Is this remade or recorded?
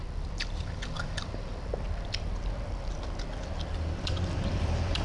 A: remade